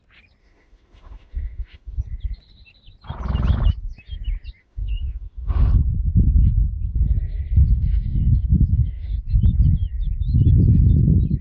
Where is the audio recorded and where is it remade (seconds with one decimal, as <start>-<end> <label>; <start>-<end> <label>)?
0.0-0.4 recorded; 0.4-2.0 remade; 2.0-4.6 recorded; 4.6-5.7 remade; 5.7-7.6 recorded; 7.6-9.2 remade; 9.2-11.4 recorded